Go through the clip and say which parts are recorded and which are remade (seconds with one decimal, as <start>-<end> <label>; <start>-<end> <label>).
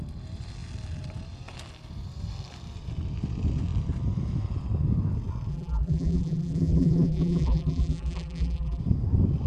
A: 0.0-5.5 recorded; 5.5-8.8 remade; 8.8-9.5 recorded